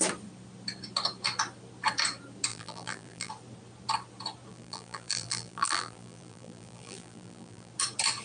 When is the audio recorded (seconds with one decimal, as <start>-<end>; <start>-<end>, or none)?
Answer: 0.0-2.5; 3.3-4.5; 7.7-8.2